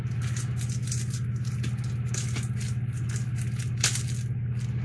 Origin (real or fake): real